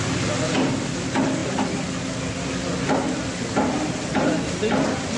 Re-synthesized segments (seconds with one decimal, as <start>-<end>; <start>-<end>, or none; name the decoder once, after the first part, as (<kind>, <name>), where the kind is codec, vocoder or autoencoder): none